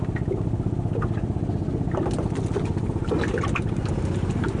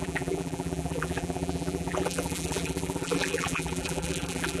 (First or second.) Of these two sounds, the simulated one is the second